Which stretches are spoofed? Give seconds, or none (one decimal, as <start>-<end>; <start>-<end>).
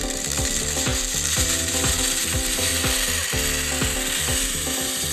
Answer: 0.0-2.7; 4.2-5.1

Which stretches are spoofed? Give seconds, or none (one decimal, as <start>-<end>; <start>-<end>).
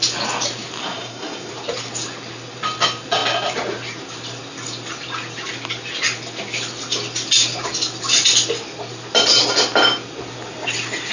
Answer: 0.8-1.5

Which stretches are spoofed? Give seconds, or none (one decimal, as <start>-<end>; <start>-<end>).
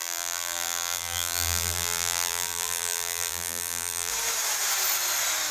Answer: 0.0-4.1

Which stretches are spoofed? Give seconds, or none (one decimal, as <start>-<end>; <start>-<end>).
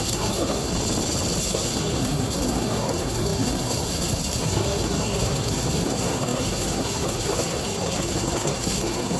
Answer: 0.0-0.7; 1.4-9.2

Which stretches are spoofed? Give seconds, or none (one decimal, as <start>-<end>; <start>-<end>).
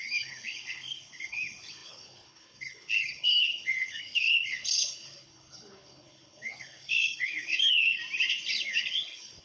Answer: 0.0-8.0; 8.5-9.4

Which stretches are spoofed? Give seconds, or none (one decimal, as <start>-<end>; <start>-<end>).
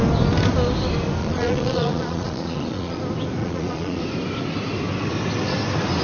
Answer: 1.2-3.0; 3.4-4.0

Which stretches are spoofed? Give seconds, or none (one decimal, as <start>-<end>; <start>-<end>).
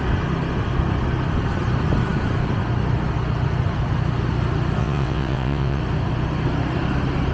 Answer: 4.8-5.8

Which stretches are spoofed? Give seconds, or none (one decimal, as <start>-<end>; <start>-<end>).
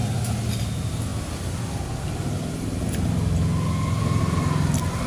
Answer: none